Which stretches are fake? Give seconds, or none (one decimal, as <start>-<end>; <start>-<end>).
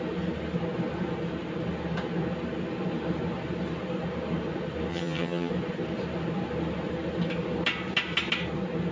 4.9-5.5